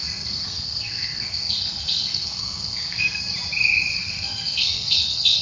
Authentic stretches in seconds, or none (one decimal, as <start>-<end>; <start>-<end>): 3.2-4.0

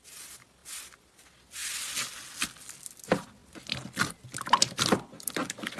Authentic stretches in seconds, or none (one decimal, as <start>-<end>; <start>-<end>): 0.0-5.8

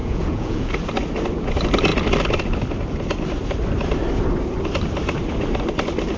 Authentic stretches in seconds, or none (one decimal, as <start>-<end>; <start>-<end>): 0.7-6.2

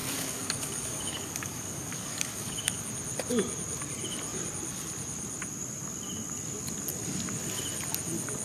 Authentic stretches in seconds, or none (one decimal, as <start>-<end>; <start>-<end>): 2.8-8.4

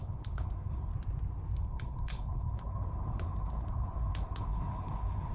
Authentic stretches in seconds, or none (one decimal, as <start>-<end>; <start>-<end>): 0.9-1.6

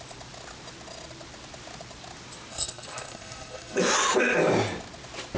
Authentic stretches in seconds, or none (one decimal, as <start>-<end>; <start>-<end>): 0.0-2.5; 3.8-5.4

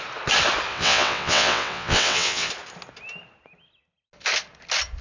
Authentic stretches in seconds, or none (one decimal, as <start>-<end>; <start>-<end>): 0.0-0.7; 2.5-5.0